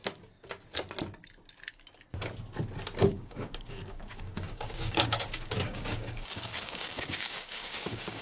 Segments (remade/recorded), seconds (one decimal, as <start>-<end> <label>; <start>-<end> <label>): 0.0-3.1 recorded; 3.1-8.2 remade